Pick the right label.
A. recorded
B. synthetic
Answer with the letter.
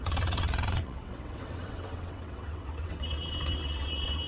B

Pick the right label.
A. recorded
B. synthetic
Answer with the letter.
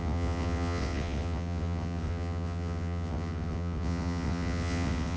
B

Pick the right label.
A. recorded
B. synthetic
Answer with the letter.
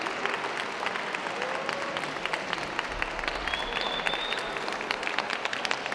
A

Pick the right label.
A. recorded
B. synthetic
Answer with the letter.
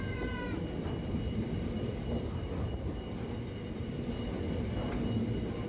A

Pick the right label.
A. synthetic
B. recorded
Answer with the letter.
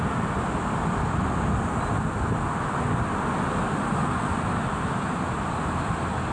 B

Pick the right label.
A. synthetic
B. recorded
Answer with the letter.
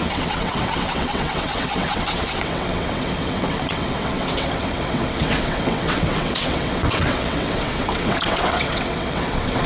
A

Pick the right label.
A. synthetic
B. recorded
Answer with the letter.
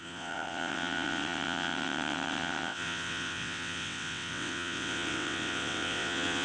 A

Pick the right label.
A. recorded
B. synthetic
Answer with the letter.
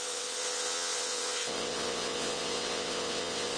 B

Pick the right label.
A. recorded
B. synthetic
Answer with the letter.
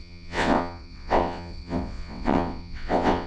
B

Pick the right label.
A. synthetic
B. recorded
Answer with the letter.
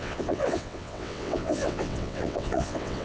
A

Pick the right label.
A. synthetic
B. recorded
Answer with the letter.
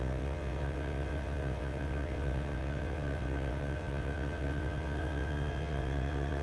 A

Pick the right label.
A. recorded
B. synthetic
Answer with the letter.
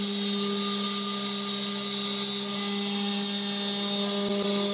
A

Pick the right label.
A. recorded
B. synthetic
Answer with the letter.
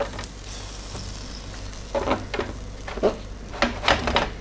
A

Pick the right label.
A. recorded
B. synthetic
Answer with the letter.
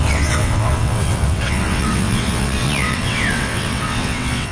B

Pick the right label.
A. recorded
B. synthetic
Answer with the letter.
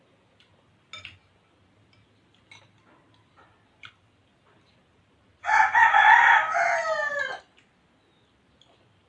A